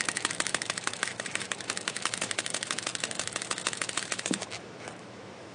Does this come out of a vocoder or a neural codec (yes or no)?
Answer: yes